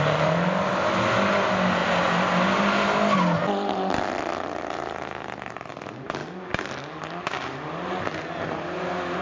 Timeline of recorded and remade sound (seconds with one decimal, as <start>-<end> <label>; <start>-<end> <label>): 0.0-9.2 recorded